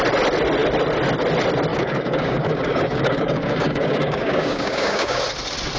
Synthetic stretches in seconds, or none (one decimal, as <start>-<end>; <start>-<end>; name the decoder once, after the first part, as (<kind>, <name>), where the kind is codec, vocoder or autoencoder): 1.7-5.2 (codec, DAC)